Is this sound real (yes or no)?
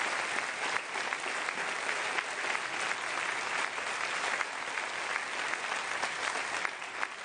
yes